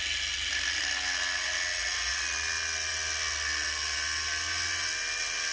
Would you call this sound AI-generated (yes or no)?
no